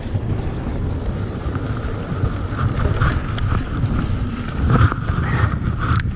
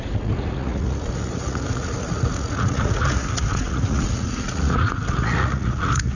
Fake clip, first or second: second